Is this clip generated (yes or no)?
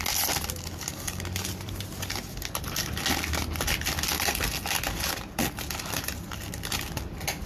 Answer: no